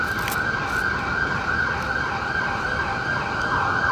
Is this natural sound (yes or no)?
yes